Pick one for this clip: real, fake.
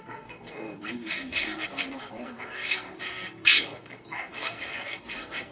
fake